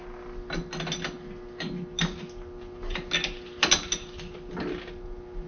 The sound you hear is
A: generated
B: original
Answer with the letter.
B